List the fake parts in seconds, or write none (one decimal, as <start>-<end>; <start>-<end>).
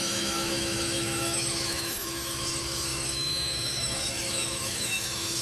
0.0-5.4